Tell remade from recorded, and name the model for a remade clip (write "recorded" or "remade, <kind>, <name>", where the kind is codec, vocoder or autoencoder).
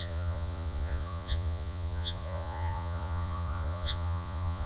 remade, vocoder, Vocos